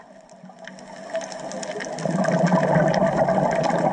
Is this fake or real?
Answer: real